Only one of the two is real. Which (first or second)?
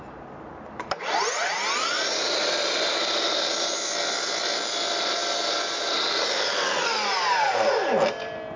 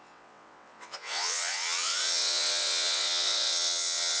first